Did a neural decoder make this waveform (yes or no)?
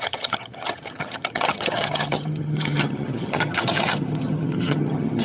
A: yes